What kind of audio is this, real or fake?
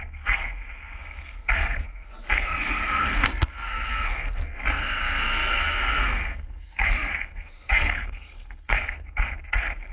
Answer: fake